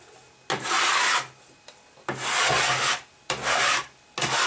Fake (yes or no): no